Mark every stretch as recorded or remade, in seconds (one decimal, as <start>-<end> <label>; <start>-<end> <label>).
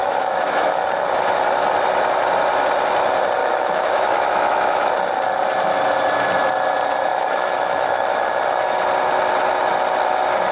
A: 0.0-0.8 remade; 0.8-3.4 recorded; 3.4-4.9 remade; 4.9-7.1 recorded; 7.1-8.3 remade; 8.3-10.5 recorded